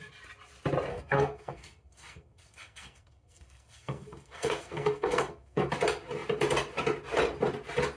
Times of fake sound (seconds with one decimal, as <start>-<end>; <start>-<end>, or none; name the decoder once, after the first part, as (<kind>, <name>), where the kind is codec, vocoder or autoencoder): 0.9-5.7 (codec, SNAC)